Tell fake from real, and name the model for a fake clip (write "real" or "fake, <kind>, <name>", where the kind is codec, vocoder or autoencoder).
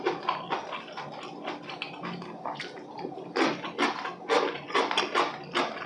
real